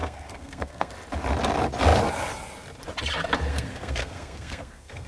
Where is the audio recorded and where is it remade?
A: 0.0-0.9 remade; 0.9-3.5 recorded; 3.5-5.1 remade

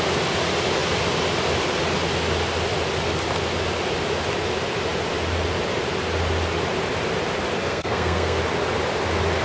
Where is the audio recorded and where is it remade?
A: 0.0-7.6 recorded; 7.6-8.4 remade; 8.4-9.4 recorded

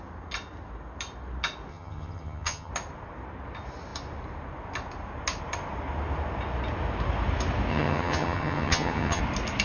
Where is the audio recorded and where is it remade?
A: 0.0-1.7 recorded; 1.7-2.7 remade; 2.7-7.7 recorded; 7.7-9.2 remade; 9.2-9.6 recorded

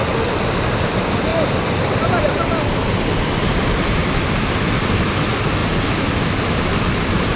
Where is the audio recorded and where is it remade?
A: 0.0-1.3 recorded; 1.3-2.4 remade; 2.4-4.0 recorded; 4.0-4.8 remade; 4.8-5.6 recorded; 5.6-6.8 remade; 6.8-7.4 recorded